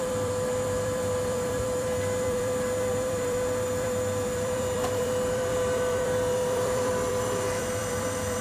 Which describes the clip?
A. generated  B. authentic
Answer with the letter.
A